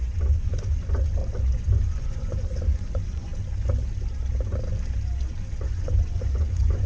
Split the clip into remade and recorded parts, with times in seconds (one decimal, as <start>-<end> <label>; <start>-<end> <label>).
0.0-1.2 remade; 1.2-1.8 recorded; 1.8-3.3 remade; 3.3-5.7 recorded; 5.7-6.9 remade